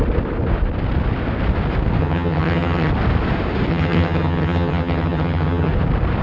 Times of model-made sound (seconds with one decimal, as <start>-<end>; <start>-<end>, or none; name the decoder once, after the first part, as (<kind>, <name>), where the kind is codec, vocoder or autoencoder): 2.0-2.9 (vocoder, HiFi-GAN); 3.7-5.7